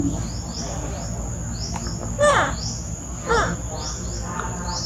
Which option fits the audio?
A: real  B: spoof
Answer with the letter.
A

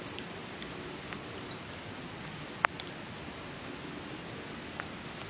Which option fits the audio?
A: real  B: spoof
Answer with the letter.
A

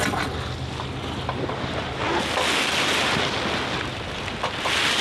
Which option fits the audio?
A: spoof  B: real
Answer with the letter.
B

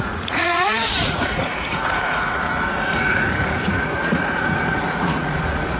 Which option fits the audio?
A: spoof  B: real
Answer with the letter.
A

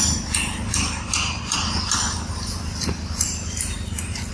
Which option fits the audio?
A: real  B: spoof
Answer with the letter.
A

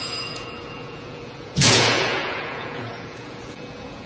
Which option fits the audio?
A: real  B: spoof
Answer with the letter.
B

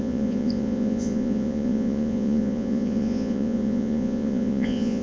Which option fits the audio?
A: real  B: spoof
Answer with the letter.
B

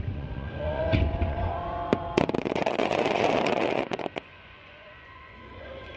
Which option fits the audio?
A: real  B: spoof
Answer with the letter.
B